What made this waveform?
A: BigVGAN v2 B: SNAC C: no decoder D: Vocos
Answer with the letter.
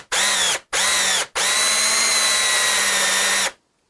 C